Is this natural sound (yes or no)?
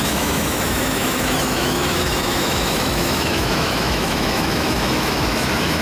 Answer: no